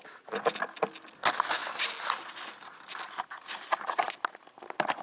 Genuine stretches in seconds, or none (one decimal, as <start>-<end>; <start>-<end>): 0.0-5.0